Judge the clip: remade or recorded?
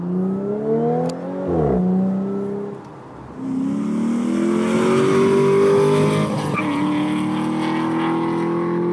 recorded